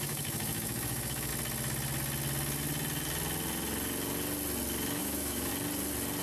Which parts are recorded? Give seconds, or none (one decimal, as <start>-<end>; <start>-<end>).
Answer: 1.3-5.0; 5.5-6.2